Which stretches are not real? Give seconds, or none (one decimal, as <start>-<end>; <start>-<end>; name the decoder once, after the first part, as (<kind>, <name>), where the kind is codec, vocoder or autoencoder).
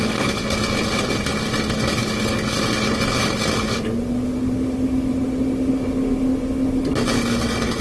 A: none